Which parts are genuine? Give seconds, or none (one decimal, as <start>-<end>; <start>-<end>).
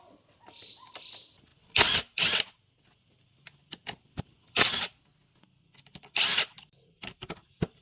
0.0-7.8